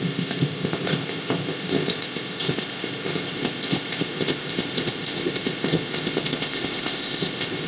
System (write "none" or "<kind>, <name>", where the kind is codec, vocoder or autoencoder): codec, ZipCodec